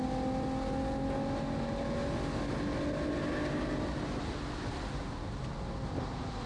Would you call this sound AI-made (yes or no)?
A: no